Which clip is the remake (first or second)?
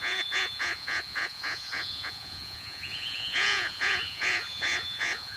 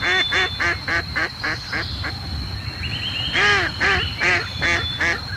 first